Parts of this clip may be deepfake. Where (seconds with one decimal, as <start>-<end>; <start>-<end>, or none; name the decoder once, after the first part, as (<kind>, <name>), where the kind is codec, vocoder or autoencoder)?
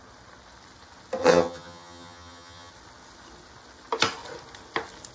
1.2-2.7 (vocoder, HiFi-GAN)